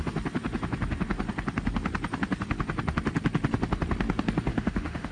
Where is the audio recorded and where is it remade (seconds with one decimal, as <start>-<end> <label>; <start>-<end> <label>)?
0.0-4.5 recorded; 4.5-5.1 remade